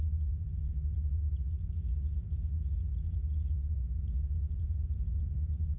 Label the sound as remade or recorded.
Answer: remade